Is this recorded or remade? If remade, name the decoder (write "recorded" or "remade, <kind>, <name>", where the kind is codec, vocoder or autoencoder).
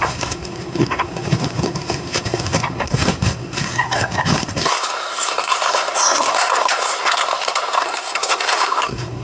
remade, codec, SNAC